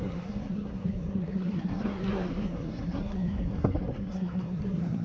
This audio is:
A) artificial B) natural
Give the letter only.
A